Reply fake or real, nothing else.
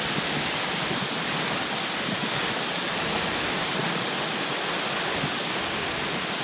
real